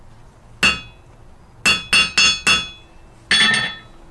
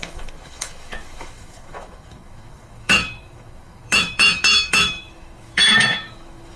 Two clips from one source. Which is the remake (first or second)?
second